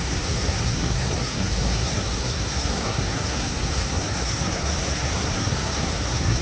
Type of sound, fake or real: fake